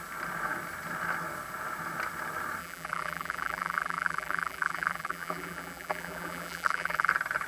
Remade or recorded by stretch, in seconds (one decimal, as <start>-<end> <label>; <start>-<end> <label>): 0.0-2.6 recorded; 2.6-7.1 remade; 7.1-7.5 recorded